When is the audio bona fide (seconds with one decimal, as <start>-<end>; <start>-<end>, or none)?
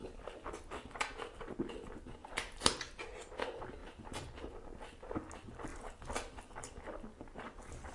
0.0-7.9